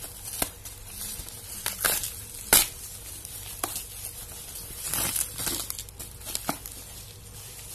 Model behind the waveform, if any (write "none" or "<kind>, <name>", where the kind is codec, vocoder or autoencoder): none